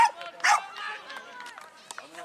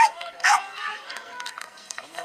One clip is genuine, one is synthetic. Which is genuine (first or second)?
first